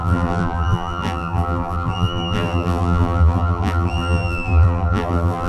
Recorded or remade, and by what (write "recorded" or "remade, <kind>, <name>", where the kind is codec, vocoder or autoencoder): remade, vocoder, BigVGAN v2